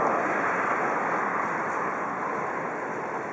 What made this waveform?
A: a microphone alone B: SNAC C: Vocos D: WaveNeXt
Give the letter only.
A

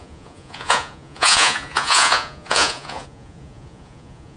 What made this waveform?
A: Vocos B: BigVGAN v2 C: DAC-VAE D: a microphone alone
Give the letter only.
A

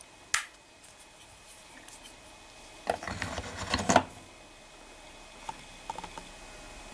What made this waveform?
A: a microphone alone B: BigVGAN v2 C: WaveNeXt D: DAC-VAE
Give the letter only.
A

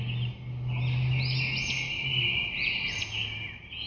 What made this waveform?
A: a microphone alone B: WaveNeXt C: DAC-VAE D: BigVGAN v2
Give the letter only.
A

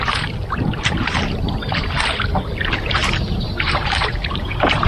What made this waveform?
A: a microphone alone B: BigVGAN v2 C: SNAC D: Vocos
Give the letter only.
B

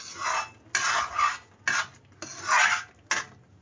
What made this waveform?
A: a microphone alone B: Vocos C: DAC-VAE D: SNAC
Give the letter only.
A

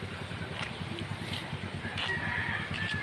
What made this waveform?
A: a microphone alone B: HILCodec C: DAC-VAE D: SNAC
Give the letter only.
A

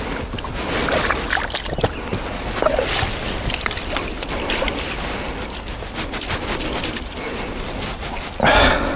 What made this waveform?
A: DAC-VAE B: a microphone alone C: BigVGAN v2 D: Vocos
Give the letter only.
B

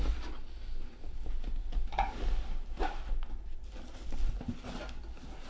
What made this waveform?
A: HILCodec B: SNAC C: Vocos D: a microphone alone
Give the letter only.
D